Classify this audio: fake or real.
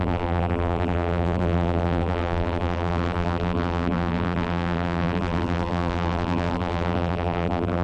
fake